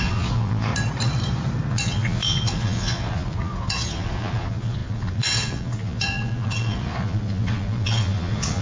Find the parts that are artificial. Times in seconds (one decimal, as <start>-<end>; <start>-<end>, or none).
0.0-0.7; 1.7-8.6